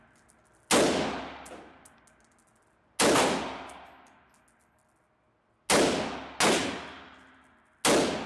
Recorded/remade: recorded